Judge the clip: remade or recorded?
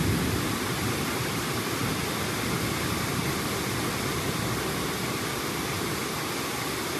recorded